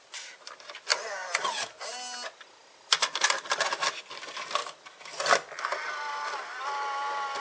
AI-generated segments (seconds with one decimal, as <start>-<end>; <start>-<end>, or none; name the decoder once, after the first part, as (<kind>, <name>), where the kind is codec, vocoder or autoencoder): 0.9-1.8 (vocoder, BigVGAN v2); 2.6-3.5